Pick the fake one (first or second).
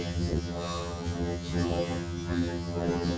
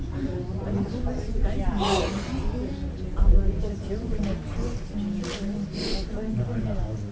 first